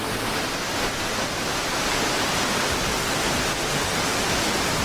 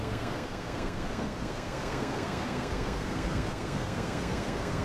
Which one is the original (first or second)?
first